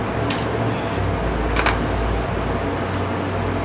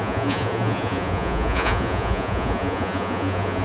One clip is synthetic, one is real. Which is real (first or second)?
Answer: first